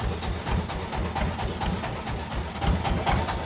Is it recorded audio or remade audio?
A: recorded